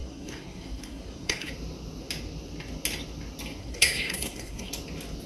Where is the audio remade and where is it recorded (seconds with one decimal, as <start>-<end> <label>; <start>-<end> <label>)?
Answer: 0.0-1.5 remade; 1.5-3.6 recorded; 3.6-4.7 remade; 4.7-5.3 recorded